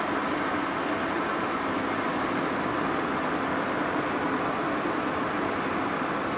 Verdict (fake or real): real